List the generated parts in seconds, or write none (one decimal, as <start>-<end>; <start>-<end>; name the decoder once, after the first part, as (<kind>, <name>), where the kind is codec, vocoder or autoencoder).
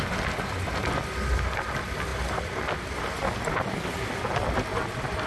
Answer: none